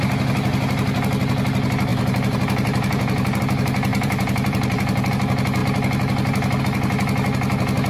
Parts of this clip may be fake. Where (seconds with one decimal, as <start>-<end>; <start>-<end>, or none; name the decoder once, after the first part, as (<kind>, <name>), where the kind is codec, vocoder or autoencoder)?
1.9-3.4 (vocoder, BigVGAN v2); 3.9-5.1